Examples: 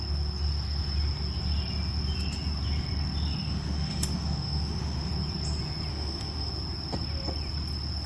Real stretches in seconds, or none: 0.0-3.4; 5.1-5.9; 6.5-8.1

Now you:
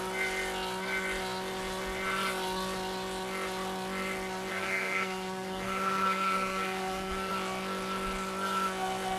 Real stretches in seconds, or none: 0.0-4.5; 7.3-9.2

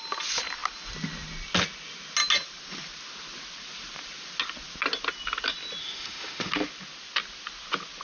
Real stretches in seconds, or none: 0.0-5.8; 6.5-8.0

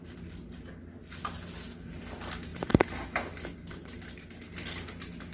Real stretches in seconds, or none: 0.0-5.3

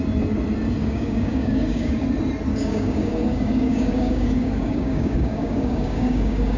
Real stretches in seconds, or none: 0.0-0.8; 1.9-2.5

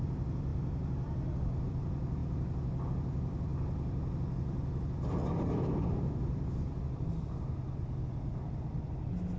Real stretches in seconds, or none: 0.0-9.4